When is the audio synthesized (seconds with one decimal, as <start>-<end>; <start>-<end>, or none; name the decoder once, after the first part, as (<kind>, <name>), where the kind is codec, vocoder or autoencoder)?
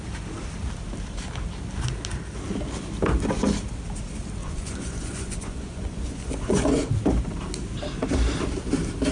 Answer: 4.4-6.9 (vocoder, Vocos)